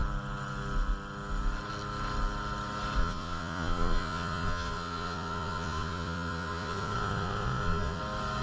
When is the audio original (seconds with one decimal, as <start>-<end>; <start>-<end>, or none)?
0.0-3.0; 8.0-8.4